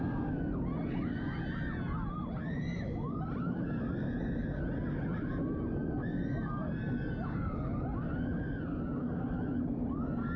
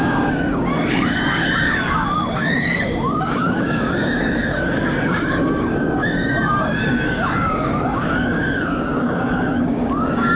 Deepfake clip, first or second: second